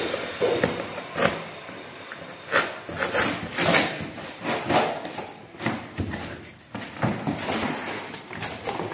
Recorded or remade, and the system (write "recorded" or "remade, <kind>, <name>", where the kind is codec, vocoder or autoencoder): recorded